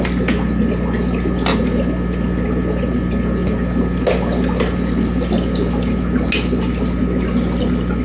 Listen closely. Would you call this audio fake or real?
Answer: real